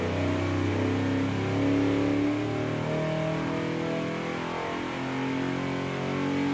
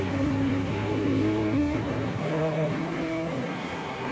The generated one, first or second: second